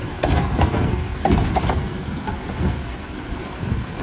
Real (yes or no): no